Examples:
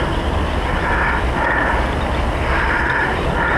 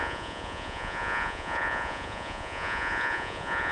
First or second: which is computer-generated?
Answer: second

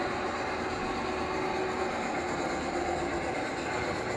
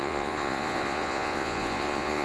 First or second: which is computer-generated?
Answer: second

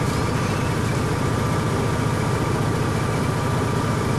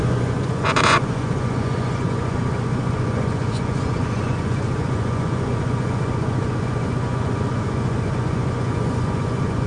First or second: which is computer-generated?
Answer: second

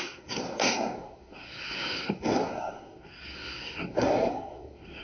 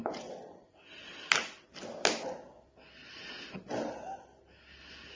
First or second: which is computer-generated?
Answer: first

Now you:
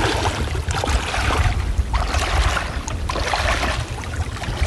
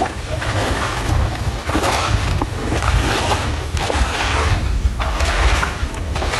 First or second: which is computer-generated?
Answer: second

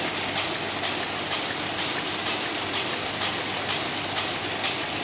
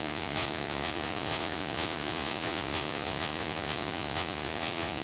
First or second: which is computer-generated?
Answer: second